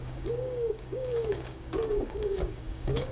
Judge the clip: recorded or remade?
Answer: remade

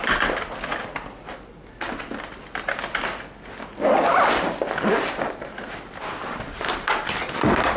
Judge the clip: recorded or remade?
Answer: recorded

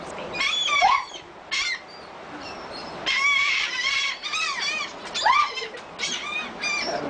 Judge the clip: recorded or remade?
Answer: remade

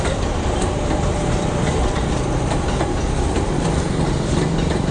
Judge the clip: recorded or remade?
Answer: remade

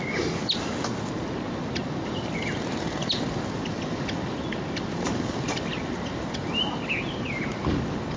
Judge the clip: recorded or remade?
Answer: recorded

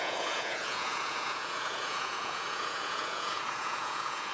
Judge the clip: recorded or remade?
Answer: remade